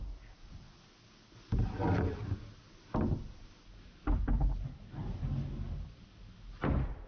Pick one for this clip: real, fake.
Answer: real